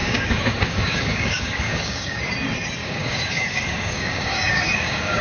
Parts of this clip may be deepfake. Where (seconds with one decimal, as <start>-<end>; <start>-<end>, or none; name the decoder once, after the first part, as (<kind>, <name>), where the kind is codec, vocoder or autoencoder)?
0.0-2.2 (codec, DAC); 2.8-5.2